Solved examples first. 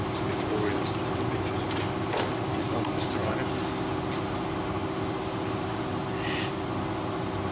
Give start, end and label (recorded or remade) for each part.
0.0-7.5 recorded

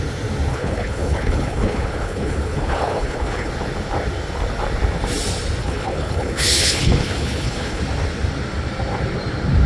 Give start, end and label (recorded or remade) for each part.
0.0-0.5 recorded; 0.5-3.5 remade; 3.5-5.6 recorded; 5.6-7.8 remade; 7.8-9.7 recorded

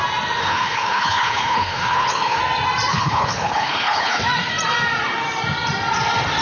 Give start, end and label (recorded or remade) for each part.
0.0-0.4 recorded; 0.4-2.4 remade; 2.4-2.9 recorded; 2.9-4.2 remade; 4.2-6.4 recorded